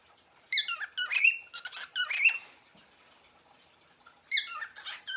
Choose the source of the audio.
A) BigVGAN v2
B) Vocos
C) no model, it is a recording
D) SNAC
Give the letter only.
C